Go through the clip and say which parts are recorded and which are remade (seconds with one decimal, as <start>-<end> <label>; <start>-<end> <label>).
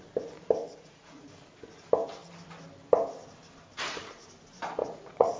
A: 0.0-0.6 recorded; 0.6-1.3 remade; 1.3-4.8 recorded; 4.8-5.4 remade